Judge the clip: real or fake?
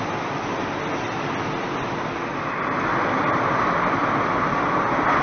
real